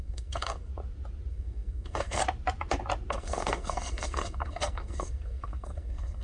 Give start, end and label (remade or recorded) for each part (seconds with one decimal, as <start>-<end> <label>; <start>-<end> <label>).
0.0-0.7 remade; 0.7-1.3 recorded; 1.3-2.2 remade; 2.2-3.1 recorded; 3.1-6.2 remade